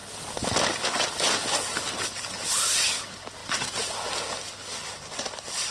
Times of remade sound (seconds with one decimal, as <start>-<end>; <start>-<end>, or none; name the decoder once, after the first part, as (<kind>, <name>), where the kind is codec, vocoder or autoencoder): none

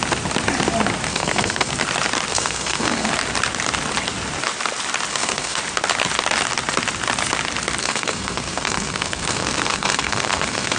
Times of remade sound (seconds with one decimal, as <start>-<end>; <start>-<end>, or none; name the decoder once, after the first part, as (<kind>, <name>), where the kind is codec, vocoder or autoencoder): 1.1-1.7 (codec, SNAC); 2.3-3.1; 5.1-5.6; 7.8-10.8

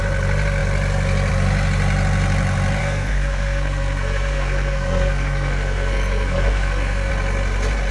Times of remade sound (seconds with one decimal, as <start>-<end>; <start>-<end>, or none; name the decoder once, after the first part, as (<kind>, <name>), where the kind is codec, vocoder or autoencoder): 2.8-7.1 (codec, SNAC)

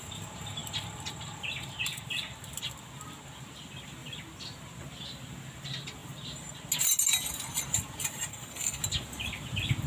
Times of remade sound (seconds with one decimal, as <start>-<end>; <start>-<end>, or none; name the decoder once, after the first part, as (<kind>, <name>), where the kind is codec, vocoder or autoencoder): 8.3-8.8 (codec, SNAC)

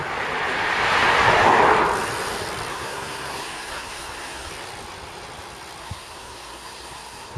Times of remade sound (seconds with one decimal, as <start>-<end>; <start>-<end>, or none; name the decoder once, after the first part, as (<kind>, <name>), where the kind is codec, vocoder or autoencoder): 2.7-4.5 (codec, SNAC); 5.8-7.4

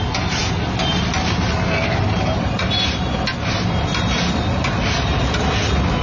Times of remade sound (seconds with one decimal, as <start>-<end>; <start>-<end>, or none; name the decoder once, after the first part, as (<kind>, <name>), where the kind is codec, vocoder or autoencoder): none

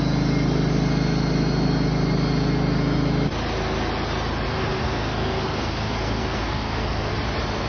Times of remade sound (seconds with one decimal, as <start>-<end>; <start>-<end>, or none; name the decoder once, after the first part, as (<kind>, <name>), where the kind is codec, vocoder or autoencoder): 4.5-7.1 (codec, SNAC)